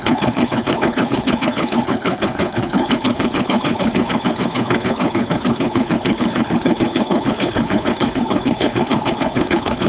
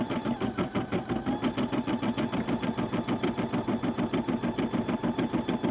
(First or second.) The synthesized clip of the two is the first